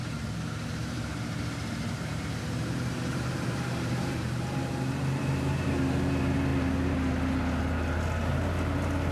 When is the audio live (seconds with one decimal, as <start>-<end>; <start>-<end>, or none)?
5.2-9.1